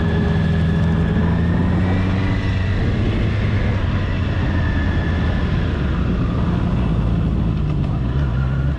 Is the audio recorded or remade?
recorded